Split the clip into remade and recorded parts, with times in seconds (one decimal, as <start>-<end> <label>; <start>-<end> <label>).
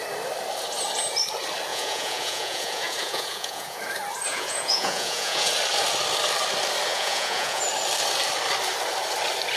0.0-1.7 recorded; 1.7-3.8 remade; 3.8-4.3 recorded; 4.3-5.5 remade; 5.5-6.9 recorded; 6.9-7.6 remade; 7.6-9.6 recorded